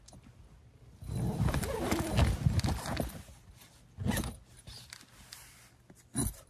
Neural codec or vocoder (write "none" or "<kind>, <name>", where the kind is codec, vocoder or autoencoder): none